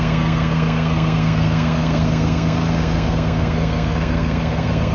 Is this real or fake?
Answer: fake